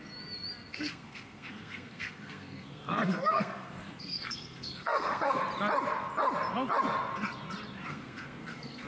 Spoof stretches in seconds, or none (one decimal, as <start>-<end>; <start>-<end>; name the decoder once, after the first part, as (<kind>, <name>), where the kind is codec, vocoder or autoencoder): 0.7-5.4 (codec, SNAC); 7.9-8.9